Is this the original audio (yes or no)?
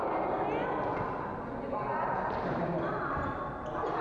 yes